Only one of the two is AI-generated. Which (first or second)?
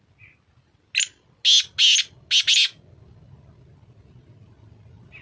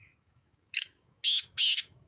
second